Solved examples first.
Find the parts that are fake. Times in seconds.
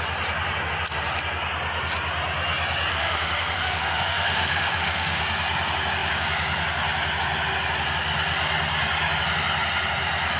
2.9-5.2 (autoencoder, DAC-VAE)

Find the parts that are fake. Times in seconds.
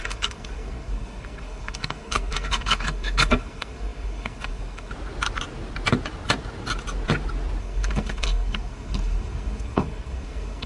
0.0-4.9 (codec, SNAC); 7.6-10.7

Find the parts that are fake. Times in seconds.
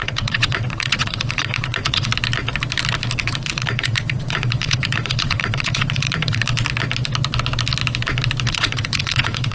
0.0-2.1 (vocoder, Vocos); 3.2-6.5; 8.5-9.5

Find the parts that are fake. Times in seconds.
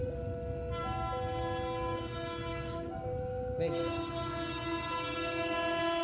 2.5-3.8 (codec, DAC)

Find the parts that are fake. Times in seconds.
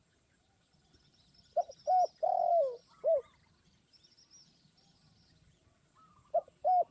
none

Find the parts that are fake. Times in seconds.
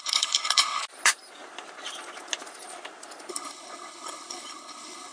0.0-0.8 (codec, HILCodec); 3.3-5.1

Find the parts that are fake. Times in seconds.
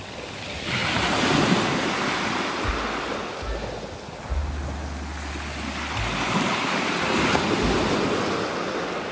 none